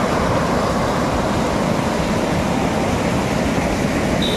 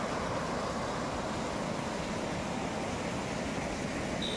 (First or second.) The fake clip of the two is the first